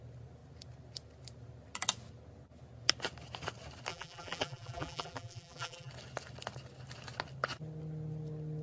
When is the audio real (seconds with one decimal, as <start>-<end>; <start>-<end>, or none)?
0.0-3.9; 5.9-8.6